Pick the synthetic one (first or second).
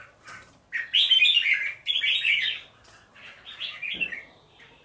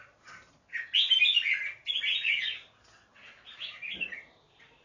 first